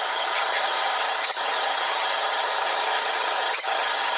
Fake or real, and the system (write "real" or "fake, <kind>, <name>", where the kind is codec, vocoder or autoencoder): fake, vocoder, HiFi-GAN